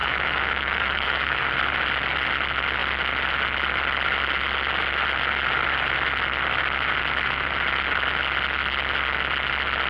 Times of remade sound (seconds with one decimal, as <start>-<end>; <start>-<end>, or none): 0.0-1.4